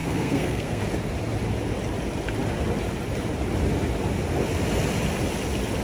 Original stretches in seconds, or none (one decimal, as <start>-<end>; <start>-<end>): 0.8-5.8